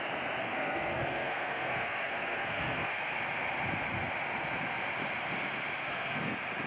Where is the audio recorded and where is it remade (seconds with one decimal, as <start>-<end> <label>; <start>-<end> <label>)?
0.0-0.4 recorded; 0.4-2.9 remade; 2.9-5.8 recorded; 5.8-6.3 remade; 6.3-6.7 recorded